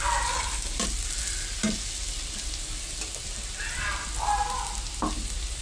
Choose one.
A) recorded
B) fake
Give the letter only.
A